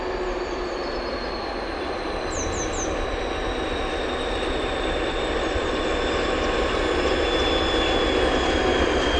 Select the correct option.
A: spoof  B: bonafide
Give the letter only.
B